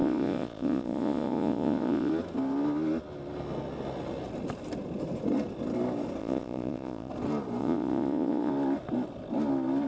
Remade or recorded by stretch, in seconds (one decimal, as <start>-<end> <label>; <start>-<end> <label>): 0.0-2.1 remade; 2.1-6.2 recorded; 6.2-7.1 remade; 7.1-7.6 recorded; 7.6-8.5 remade; 8.5-9.9 recorded